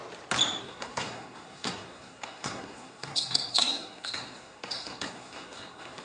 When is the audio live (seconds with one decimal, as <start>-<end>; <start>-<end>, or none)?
0.0-0.6